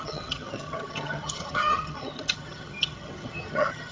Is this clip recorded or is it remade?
remade